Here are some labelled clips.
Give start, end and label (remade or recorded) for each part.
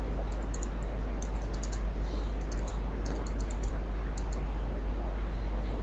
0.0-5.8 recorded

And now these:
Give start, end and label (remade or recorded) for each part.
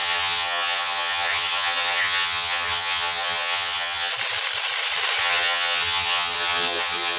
0.0-4.1 remade; 4.1-5.2 recorded; 5.2-7.2 remade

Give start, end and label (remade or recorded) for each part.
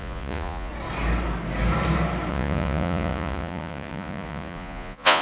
0.0-0.7 remade; 0.7-2.3 recorded; 2.3-5.2 remade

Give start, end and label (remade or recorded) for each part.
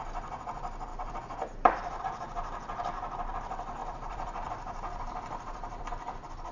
0.0-0.9 recorded; 0.9-2.0 remade; 2.0-3.8 recorded; 3.8-5.9 remade; 5.9-6.5 recorded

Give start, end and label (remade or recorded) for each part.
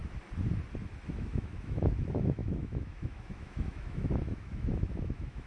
0.0-1.1 recorded; 1.1-5.5 remade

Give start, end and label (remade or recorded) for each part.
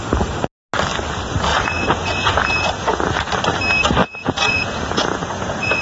0.0-1.5 recorded; 1.5-3.1 remade; 3.1-4.0 recorded; 4.0-5.8 remade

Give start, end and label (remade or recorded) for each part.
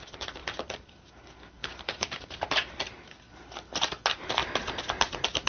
0.0-0.4 recorded; 0.4-1.1 remade; 1.1-1.6 recorded; 1.6-2.2 remade; 2.2-5.5 recorded